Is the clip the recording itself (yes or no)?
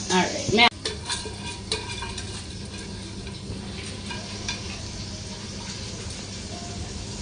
yes